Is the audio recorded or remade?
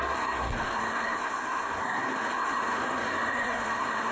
remade